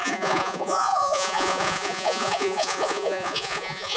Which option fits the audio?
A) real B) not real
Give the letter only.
B